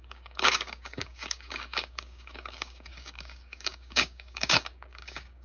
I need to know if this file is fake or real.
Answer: fake